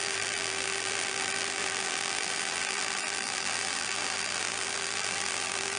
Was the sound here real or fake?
fake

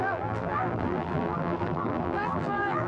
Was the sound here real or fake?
fake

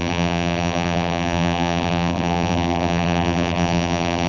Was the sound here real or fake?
fake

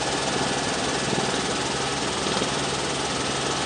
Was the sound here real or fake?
real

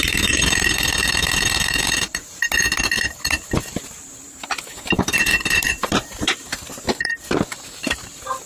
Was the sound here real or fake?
fake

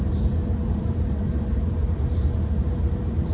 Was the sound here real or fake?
fake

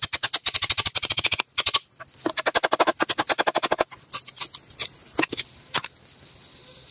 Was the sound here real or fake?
real